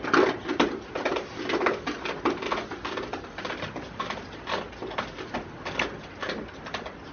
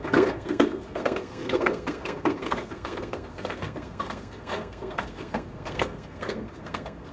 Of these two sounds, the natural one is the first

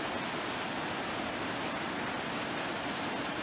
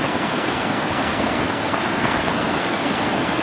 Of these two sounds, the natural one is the first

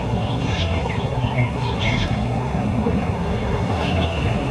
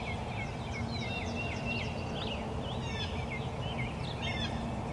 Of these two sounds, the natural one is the second